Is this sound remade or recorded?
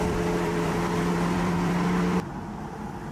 remade